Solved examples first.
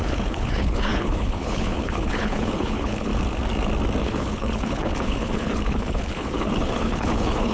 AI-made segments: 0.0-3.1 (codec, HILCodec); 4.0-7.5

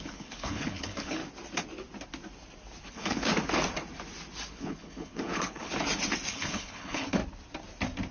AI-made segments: 0.0-1.2 (codec, HILCodec); 2.9-3.3; 4.5-5.7; 6.3-7.2

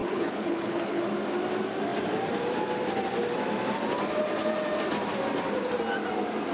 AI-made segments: 0.0-1.0 (codec, HILCodec)

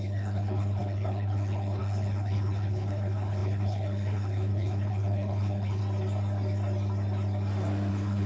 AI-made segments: 0.0-5.8 (codec, HILCodec); 7.9-8.3

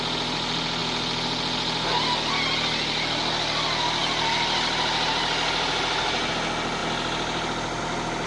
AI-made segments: none

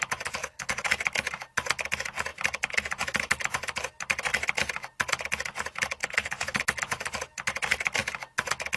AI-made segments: 0.4-0.9 (codec, HILCodec); 6.0-6.6

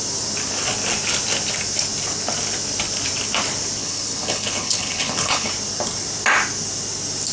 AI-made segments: 3.8-5.5 (codec, HILCodec)

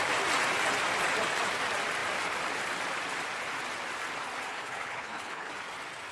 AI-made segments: 4.5-5.5 (codec, HILCodec)